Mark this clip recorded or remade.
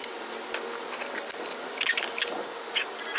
recorded